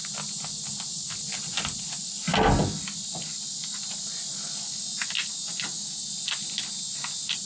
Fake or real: real